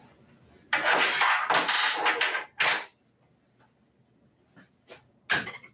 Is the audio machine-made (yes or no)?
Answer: no